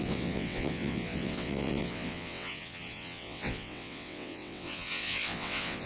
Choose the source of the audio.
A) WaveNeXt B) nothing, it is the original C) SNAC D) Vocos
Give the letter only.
A